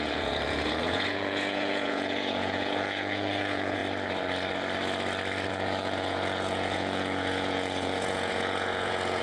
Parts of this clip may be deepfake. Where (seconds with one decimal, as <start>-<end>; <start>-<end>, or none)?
0.0-3.8; 5.5-9.2